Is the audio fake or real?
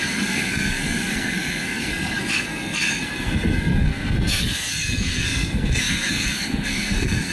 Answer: fake